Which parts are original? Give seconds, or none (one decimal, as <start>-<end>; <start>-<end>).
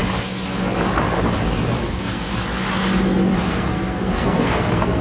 0.0-1.8; 2.3-3.4